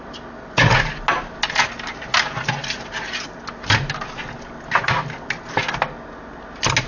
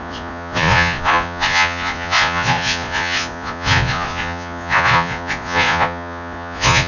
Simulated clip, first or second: second